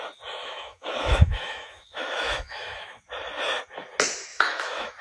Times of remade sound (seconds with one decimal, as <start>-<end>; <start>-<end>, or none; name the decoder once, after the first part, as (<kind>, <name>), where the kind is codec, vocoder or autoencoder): 0.4-3.0 (autoencoder, DAC-VAE); 4.3-5.0